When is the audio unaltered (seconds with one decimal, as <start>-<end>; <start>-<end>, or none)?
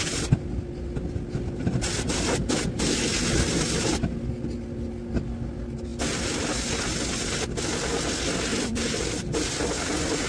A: 0.0-5.9; 6.7-8.5